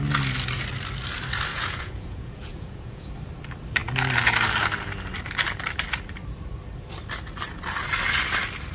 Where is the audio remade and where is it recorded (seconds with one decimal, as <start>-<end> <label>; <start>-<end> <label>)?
0.0-1.5 recorded; 1.5-3.1 remade; 3.1-8.7 recorded